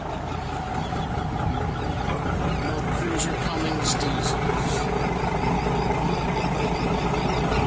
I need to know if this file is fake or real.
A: real